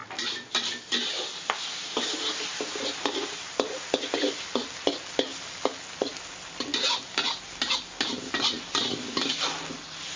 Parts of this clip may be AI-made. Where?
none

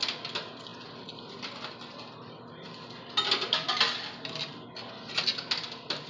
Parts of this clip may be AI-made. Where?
none

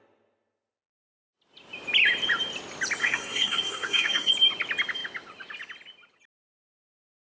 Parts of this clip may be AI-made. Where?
3.0-4.3 (codec, SNAC)

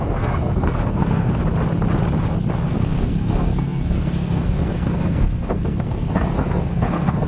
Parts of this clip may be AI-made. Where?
0.0-1.4 (codec, SNAC); 2.7-7.3

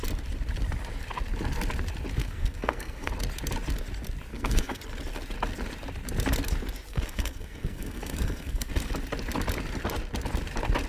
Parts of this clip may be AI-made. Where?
2.2-3.1 (codec, SNAC); 4.3-4.8; 6.9-8.7

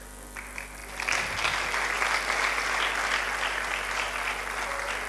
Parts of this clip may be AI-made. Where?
none

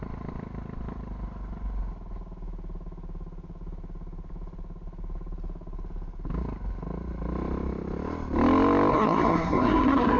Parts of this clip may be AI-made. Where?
8.9-10.2 (codec, SNAC)

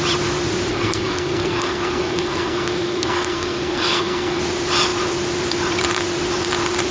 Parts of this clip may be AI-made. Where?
0.7-4.4 (codec, SNAC)